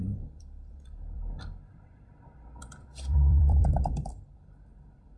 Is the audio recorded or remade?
remade